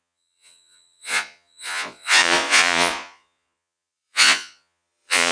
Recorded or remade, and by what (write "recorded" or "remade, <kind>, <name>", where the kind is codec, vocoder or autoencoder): remade, vocoder, Vocos